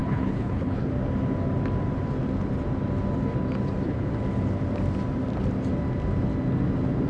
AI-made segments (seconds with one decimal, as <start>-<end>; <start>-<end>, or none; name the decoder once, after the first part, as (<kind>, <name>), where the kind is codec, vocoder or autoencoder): 0.0-0.9 (codec, HILCodec)